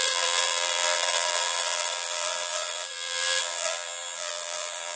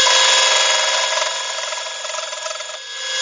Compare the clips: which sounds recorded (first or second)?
second